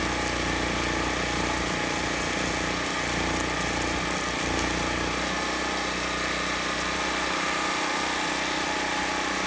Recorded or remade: recorded